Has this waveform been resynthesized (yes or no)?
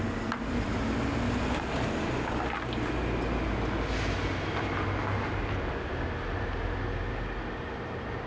no